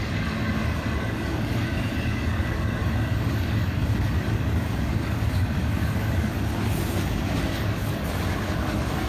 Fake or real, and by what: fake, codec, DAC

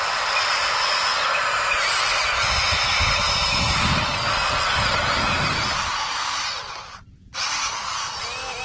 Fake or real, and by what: real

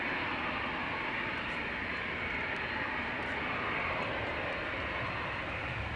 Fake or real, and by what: real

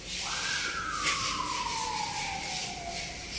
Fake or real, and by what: real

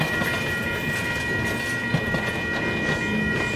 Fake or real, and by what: real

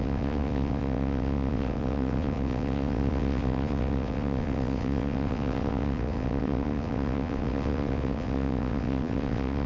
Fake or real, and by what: fake, vocoder, WaveNeXt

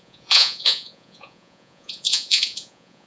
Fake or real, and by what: fake, vocoder, Vocos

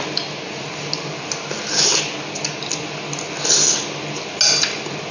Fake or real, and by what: real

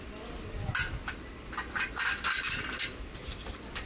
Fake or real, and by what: real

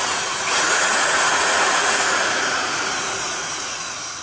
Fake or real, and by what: fake, vocoder, Vocos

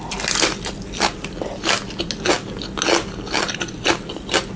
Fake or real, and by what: real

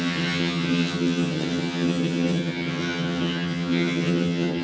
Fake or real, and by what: fake, vocoder, HiFi-GAN